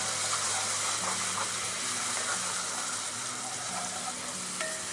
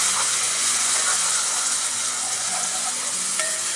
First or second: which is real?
first